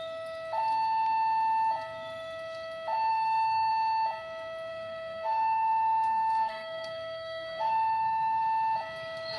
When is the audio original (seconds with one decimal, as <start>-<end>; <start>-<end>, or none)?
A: 0.0-3.1; 3.7-4.7; 8.4-9.4